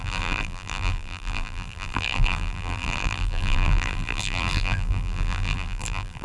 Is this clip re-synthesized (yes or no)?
yes